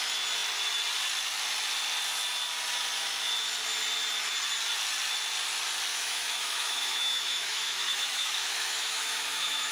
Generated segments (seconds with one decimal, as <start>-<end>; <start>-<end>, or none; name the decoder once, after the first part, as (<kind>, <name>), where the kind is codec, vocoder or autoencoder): 5.9-9.7 (autoencoder, DAC-VAE)